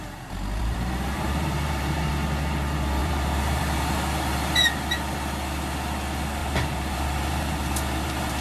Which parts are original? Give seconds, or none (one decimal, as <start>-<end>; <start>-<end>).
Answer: 0.0-0.6; 2.1-3.0; 3.6-6.4